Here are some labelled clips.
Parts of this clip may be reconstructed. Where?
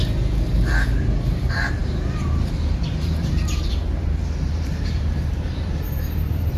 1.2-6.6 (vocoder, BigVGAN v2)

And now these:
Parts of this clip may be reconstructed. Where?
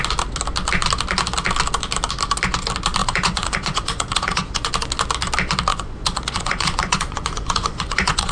3.0-4.7 (vocoder, Vocos); 5.7-8.3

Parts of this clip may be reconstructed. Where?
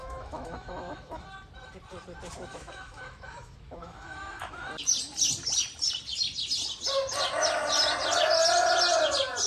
0.0-1.2 (autoencoder, DAC-VAE); 2.5-4.7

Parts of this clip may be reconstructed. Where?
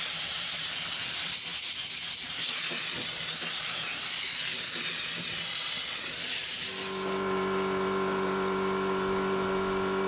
0.0-1.5 (vocoder, BigVGAN v2); 3.5-10.1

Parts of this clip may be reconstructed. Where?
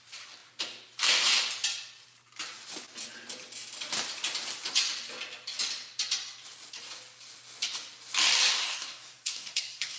8.6-10.0 (codec, SNAC)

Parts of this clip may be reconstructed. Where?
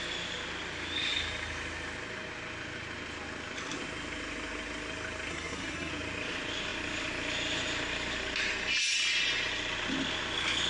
5.3-5.9 (codec, SNAC)